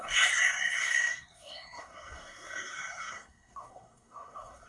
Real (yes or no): no